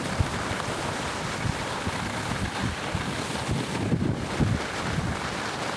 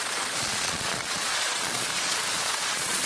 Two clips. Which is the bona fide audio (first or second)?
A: first